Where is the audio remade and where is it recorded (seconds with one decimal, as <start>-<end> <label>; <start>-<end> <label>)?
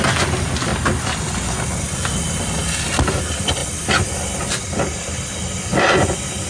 0.0-0.7 remade; 0.7-2.4 recorded; 2.4-3.6 remade; 3.6-4.4 recorded; 4.4-6.5 remade